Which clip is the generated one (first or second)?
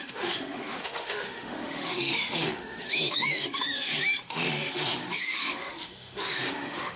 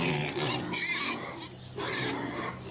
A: first